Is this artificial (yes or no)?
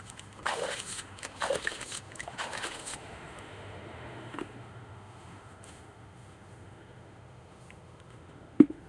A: yes